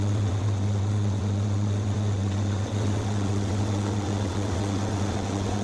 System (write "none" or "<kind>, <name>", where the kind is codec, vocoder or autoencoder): vocoder, WaveNeXt